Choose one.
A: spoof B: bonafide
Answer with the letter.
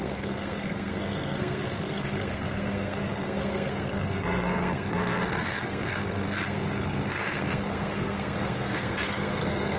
A